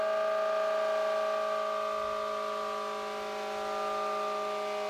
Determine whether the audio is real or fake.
real